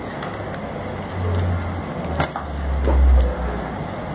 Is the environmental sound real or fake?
real